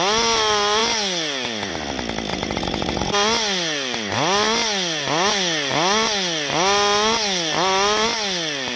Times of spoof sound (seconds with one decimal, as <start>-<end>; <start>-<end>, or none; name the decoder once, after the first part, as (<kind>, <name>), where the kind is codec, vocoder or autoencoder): 2.3-3.1 (vocoder, Vocos)